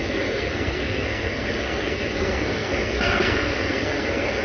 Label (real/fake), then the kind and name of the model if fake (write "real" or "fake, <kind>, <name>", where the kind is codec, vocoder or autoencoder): fake, codec, SNAC